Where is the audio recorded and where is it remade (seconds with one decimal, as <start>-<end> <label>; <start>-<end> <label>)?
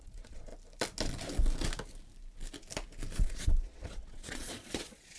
0.0-0.5 remade; 0.5-3.2 recorded; 3.2-5.2 remade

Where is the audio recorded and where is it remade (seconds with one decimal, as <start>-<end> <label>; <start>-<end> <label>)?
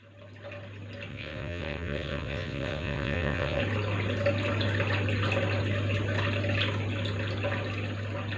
0.0-1.1 recorded; 1.1-3.6 remade; 3.6-8.4 recorded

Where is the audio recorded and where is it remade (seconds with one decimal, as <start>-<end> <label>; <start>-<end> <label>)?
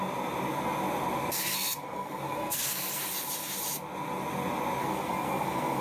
0.0-1.3 recorded; 1.3-3.0 remade; 3.0-4.8 recorded; 4.8-5.8 remade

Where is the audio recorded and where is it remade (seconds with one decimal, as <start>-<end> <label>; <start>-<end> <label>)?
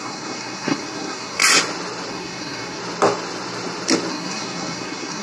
0.0-1.4 remade; 1.4-2.1 recorded; 2.1-2.8 remade; 2.8-4.1 recorded; 4.1-5.2 remade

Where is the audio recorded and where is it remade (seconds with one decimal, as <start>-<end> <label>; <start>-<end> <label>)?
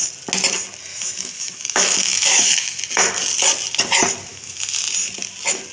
0.0-0.9 recorded; 0.9-2.8 remade; 2.8-4.3 recorded; 4.3-4.8 remade; 4.8-5.7 recorded